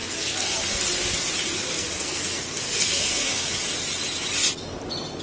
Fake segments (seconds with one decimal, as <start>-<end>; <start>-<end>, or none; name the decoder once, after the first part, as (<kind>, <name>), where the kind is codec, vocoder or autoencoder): 0.0-0.8 (codec, SNAC); 1.5-3.5